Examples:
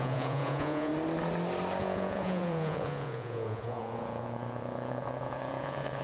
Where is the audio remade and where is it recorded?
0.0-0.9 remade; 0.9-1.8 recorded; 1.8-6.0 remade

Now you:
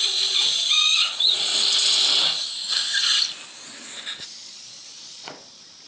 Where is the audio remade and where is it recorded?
0.0-1.5 remade; 1.5-4.4 recorded; 4.4-5.9 remade

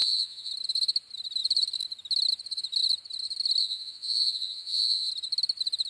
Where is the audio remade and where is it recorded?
0.0-0.5 remade; 0.5-3.6 recorded; 3.6-5.1 remade; 5.1-5.9 recorded

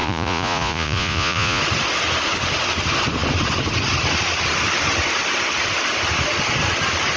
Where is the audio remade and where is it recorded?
0.0-1.6 remade; 1.6-7.2 recorded

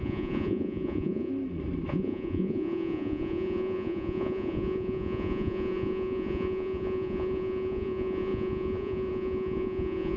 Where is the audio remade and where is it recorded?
0.0-1.3 remade; 1.3-1.9 recorded; 1.9-10.2 remade